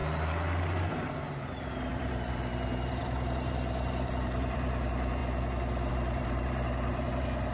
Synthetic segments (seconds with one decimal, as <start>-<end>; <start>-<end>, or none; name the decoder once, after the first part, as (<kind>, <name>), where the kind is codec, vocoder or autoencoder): 0.9-5.2 (vocoder, BigVGAN v2); 5.9-7.5